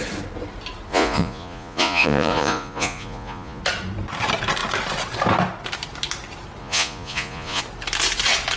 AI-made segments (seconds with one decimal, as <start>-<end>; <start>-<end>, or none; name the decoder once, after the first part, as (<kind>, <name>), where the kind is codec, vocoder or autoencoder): 0.9-3.6 (vocoder, Vocos); 6.6-7.6